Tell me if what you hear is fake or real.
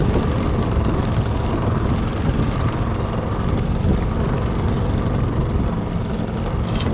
real